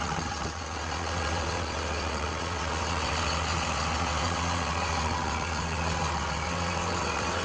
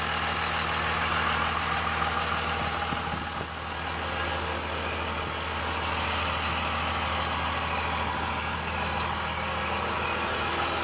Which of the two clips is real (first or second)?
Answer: second